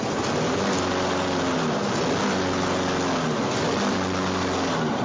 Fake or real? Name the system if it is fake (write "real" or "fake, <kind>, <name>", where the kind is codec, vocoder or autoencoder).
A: real